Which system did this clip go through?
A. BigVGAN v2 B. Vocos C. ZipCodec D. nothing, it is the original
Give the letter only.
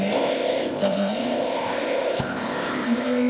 C